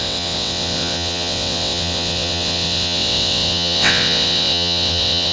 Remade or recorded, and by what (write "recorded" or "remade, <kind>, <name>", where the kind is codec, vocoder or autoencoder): remade, vocoder, WaveNeXt